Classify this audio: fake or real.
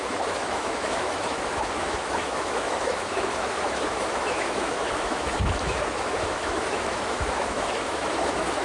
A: fake